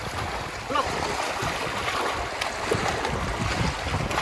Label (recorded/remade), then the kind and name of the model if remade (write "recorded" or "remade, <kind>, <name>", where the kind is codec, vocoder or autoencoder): recorded